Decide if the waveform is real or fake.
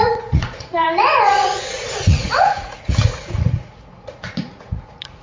fake